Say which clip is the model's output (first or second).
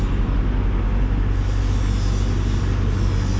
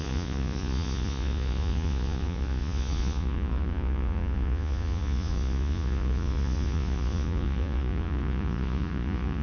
second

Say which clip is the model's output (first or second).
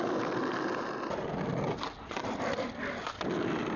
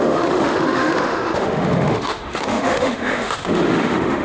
second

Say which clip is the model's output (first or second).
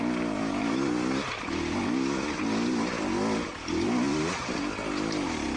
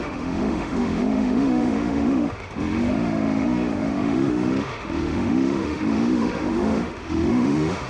second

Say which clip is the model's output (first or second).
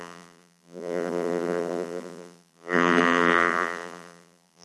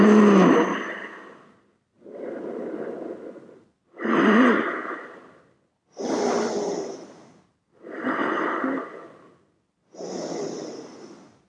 first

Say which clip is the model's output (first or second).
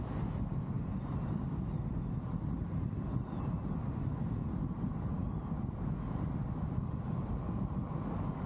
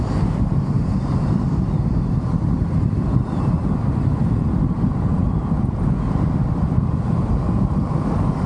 second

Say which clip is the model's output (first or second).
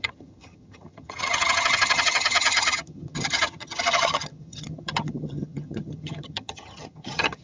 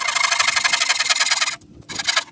first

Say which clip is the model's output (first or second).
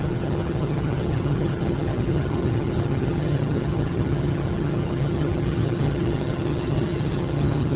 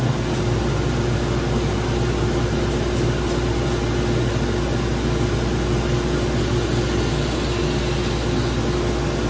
first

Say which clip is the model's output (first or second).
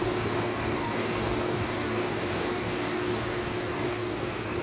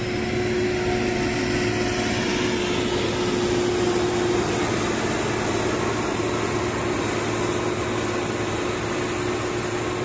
first